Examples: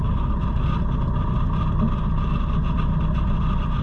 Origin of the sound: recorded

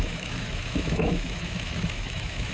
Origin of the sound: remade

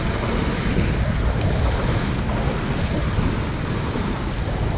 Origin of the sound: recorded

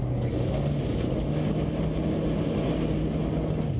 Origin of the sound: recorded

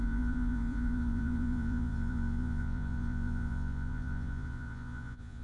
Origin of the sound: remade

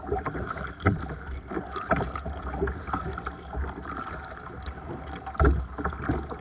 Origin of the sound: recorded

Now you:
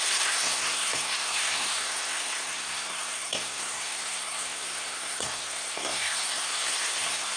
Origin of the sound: remade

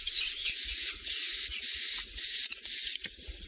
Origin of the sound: remade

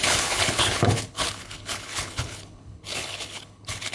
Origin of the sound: remade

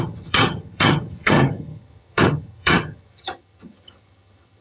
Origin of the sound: remade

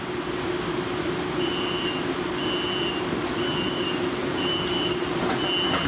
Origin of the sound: recorded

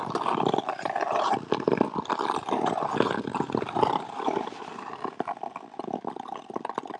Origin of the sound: recorded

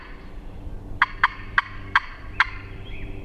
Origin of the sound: remade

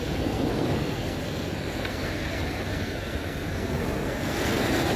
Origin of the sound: remade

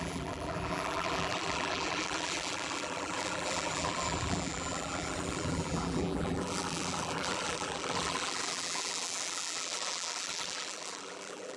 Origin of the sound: remade